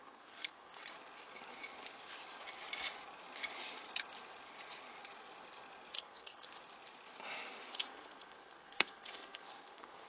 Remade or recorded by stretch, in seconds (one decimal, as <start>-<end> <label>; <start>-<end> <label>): 0.0-0.8 remade; 0.8-5.9 recorded; 5.9-6.6 remade; 6.6-7.7 recorded; 7.7-10.1 remade